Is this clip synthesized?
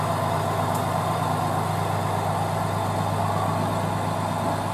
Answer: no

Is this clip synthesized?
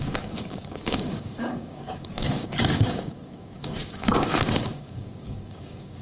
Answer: yes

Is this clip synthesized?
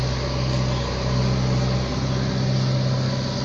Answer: no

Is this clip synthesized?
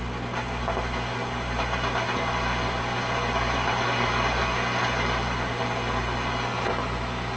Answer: no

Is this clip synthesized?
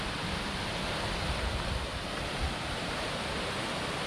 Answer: no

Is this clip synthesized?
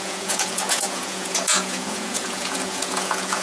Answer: yes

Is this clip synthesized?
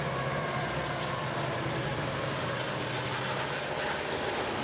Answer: no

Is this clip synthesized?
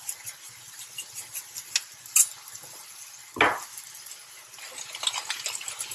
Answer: no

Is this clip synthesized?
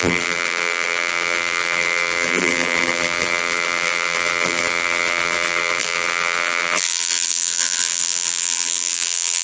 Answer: yes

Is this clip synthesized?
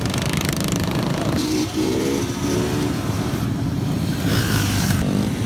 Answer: yes